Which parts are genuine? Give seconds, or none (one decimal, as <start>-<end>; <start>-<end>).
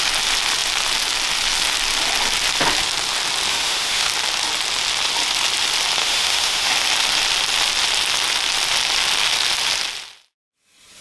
0.0-3.5; 4.1-6.0; 6.7-11.0